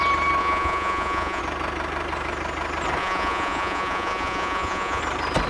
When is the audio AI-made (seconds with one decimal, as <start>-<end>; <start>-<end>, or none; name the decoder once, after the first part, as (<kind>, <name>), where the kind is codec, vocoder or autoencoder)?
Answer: 0.4-1.4 (vocoder, Vocos); 3.0-5.0